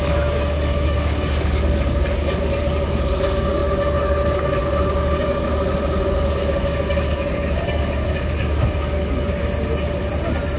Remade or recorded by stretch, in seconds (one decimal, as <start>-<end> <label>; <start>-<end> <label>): 0.0-9.4 remade; 9.4-10.6 recorded